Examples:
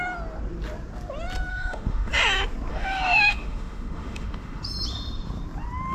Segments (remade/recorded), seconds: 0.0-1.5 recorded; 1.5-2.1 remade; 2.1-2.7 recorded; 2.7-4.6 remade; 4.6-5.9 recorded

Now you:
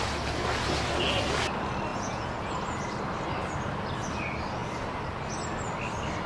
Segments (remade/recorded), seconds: 0.0-1.9 recorded; 1.9-2.5 remade; 2.5-6.3 recorded

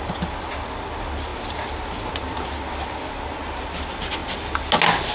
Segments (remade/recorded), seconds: 0.0-5.1 recorded

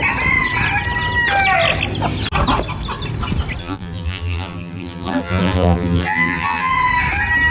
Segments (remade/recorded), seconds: 0.0-3.6 recorded; 3.6-6.7 remade; 6.7-7.5 recorded

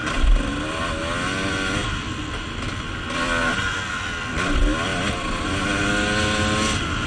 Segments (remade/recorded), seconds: 0.0-7.1 recorded

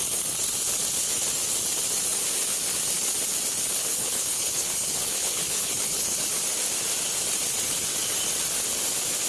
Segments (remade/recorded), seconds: 0.0-3.8 recorded; 3.8-6.3 remade; 6.3-9.3 recorded